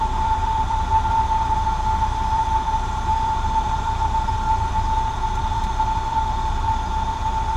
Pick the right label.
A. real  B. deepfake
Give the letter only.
B